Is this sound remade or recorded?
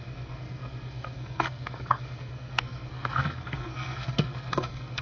remade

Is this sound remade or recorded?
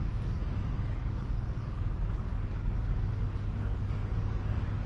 remade